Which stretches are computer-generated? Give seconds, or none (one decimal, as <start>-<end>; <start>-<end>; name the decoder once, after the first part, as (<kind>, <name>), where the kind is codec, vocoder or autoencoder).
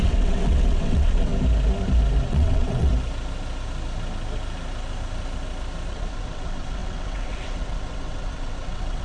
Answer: 0.0-1.3 (vocoder, WaveNeXt); 2.3-2.9; 5.9-9.0